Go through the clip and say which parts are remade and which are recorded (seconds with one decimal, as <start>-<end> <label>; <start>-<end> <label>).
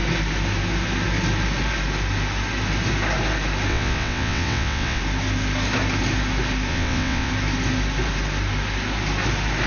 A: 0.0-3.7 recorded; 3.7-5.0 remade; 5.0-6.7 recorded; 6.7-7.3 remade; 7.3-9.7 recorded